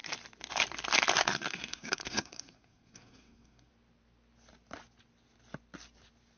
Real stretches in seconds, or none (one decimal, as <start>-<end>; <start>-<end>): 0.0-1.2; 3.7-6.4